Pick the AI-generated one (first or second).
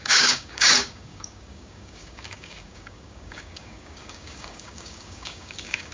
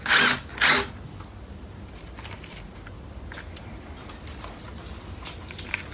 first